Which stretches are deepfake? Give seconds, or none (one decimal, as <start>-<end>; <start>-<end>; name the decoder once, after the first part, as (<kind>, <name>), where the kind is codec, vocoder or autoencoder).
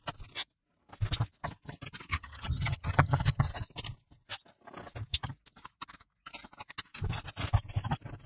2.1-3.5 (vocoder, HiFi-GAN)